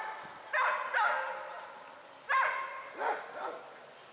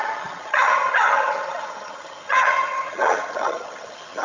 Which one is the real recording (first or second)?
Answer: first